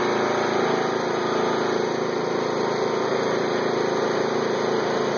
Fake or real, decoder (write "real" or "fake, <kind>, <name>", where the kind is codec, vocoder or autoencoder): real